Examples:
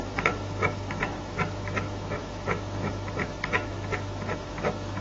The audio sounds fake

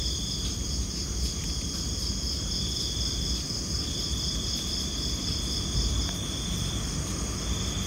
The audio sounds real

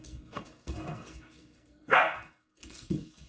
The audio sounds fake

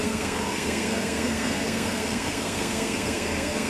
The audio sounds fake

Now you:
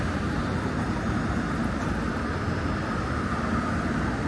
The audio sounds real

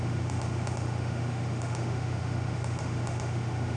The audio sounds fake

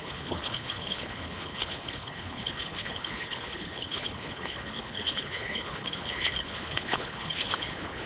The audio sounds fake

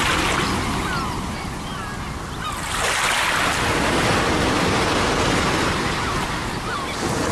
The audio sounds real